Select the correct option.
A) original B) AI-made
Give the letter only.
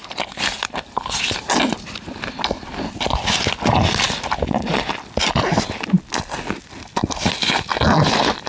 A